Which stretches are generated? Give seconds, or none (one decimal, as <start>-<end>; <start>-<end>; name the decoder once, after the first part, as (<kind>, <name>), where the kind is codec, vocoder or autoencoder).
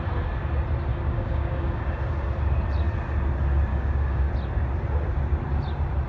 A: 0.9-1.8 (codec, DAC); 3.7-4.3